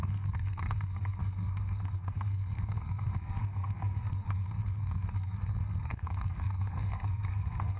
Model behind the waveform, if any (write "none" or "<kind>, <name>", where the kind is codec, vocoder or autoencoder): codec, SNAC